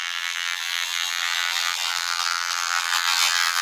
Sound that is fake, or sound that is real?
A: fake